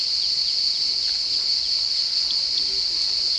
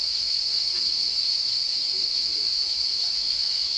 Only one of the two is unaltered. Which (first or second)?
first